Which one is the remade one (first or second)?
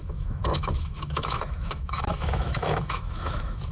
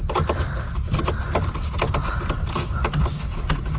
first